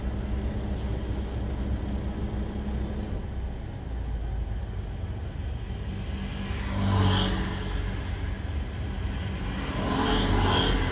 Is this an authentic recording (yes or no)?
yes